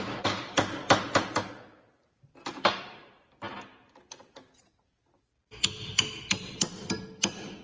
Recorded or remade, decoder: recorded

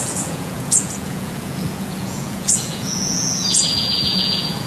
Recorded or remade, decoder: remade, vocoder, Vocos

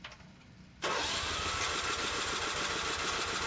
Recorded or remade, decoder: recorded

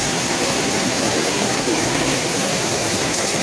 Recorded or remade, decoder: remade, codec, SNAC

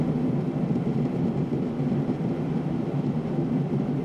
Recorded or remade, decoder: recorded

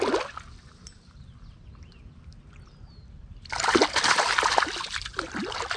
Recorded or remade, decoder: recorded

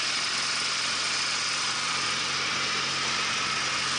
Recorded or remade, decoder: recorded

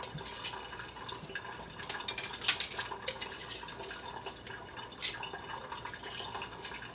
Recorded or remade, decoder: recorded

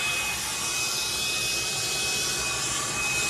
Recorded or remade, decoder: recorded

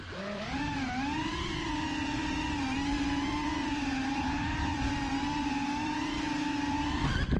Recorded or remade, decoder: remade, vocoder, BigVGAN v2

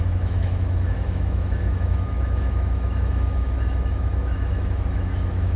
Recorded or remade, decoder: remade, autoencoder, DAC-VAE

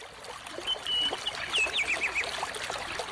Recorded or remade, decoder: recorded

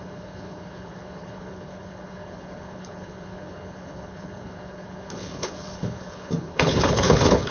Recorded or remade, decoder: remade, codec, HILCodec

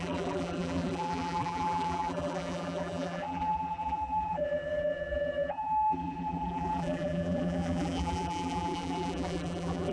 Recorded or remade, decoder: remade, vocoder, BigVGAN v2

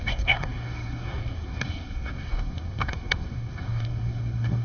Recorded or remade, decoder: remade, codec, SNAC